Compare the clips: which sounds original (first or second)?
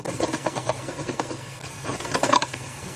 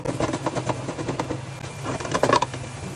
second